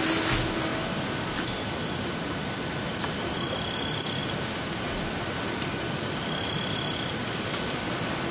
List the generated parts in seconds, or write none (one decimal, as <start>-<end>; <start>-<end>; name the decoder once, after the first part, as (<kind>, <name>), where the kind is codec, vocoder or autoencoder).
none